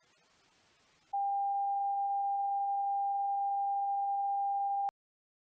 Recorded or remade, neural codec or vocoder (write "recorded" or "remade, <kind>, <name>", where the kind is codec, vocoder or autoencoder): recorded